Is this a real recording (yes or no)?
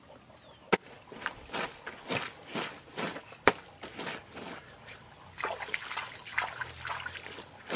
yes